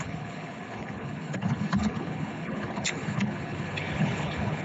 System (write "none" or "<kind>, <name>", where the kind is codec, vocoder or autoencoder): codec, HILCodec